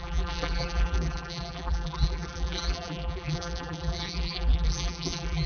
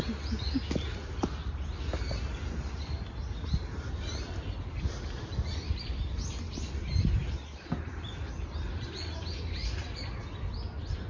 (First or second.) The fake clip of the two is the first